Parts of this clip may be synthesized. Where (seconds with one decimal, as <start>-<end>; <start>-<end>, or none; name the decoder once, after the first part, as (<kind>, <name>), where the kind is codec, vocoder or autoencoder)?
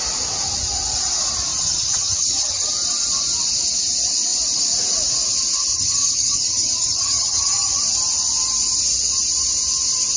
1.5-2.7 (vocoder, HiFi-GAN); 5.7-7.7